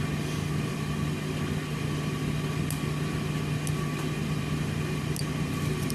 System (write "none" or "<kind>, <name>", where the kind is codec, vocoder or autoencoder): none